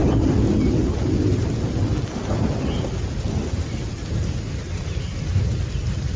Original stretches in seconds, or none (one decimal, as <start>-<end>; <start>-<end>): 0.0-6.2